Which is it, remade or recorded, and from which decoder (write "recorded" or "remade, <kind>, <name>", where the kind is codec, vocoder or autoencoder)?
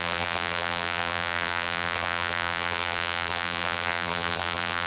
remade, vocoder, BigVGAN v2